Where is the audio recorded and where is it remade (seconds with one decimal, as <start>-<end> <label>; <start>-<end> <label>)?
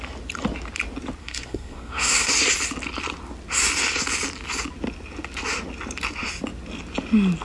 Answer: 0.0-1.2 recorded; 1.2-2.3 remade; 2.3-7.4 recorded